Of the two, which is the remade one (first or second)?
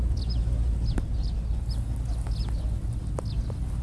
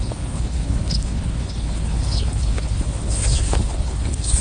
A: second